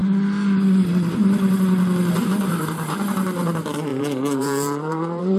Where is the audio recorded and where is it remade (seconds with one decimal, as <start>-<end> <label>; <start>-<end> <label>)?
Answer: 0.0-3.9 recorded; 3.9-5.4 remade